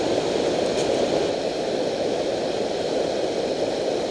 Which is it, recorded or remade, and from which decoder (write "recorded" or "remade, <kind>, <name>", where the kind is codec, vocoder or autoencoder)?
recorded